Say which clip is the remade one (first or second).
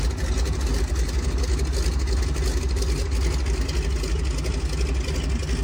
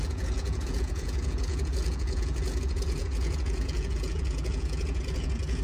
second